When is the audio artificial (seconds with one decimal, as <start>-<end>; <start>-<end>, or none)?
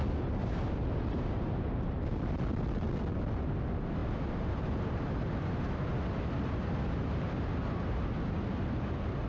0.4-2.2